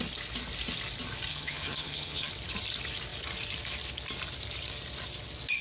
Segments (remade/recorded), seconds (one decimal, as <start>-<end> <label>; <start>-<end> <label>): 0.0-1.3 recorded; 1.3-2.3 remade; 2.3-5.6 recorded